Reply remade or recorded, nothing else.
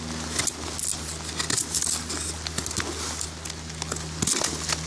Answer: recorded